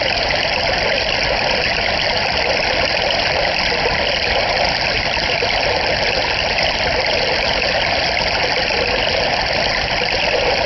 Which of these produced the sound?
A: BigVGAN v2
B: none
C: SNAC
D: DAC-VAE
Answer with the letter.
B